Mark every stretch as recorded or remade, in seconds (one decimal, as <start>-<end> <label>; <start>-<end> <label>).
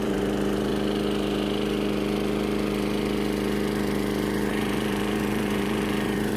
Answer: 0.0-0.7 remade; 0.7-4.5 recorded; 4.5-6.4 remade